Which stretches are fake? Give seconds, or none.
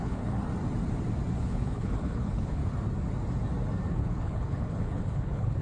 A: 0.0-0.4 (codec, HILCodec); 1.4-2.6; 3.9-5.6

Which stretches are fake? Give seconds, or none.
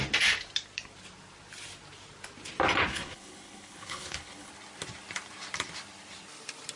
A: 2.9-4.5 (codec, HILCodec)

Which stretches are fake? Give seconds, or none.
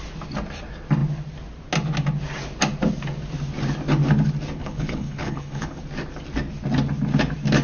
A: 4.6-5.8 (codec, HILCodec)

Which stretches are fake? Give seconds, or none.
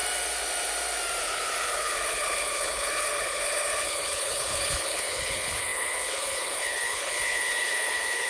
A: 1.2-8.3 (codec, HILCodec)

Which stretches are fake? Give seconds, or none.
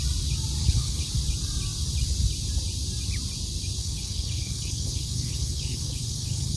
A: 0.6-1.1 (codec, HILCodec); 3.8-6.6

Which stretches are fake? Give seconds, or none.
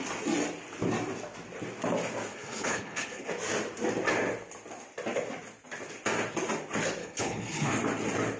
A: 2.3-3.3 (codec, HILCodec); 7.0-7.7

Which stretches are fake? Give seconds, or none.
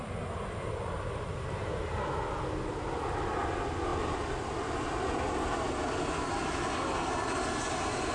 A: none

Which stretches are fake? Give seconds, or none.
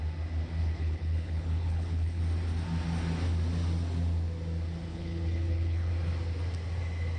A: 0.6-2.2 (codec, HILCodec); 4.9-5.9